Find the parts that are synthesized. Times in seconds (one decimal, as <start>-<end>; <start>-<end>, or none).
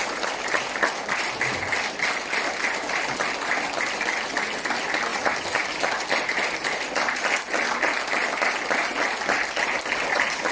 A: none